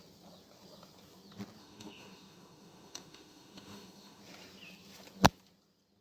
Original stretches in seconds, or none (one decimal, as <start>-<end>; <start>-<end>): 0.0-1.6; 4.2-6.0

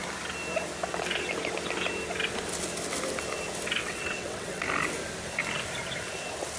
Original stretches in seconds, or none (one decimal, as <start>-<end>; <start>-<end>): 0.0-3.8; 4.6-6.6

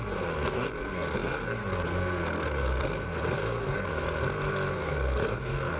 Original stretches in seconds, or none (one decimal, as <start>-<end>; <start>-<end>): 3.9-4.7